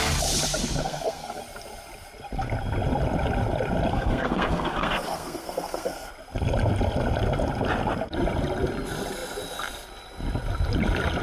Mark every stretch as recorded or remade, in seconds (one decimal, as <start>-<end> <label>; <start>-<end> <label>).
0.0-0.8 recorded; 0.8-1.4 remade; 1.4-3.9 recorded; 3.9-6.1 remade; 6.1-11.2 recorded